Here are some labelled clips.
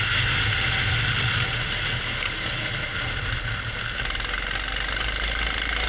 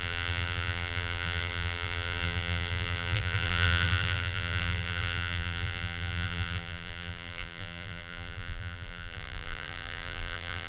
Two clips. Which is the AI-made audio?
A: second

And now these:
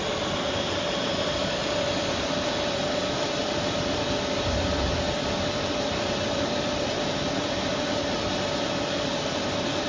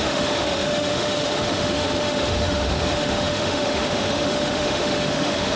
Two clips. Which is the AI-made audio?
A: second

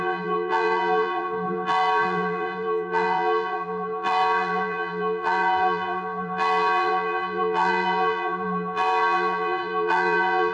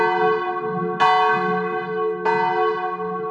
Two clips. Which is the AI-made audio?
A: first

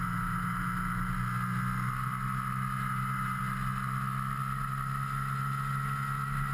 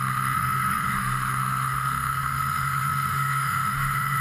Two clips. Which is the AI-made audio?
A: second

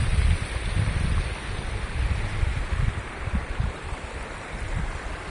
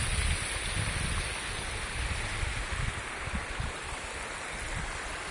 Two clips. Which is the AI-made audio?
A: first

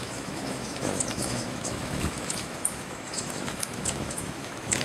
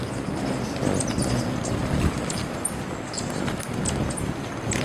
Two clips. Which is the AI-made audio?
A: first